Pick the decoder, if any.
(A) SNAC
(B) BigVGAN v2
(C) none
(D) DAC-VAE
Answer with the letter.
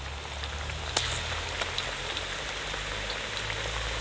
C